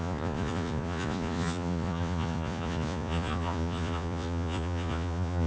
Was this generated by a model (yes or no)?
yes